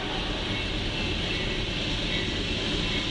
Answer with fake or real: real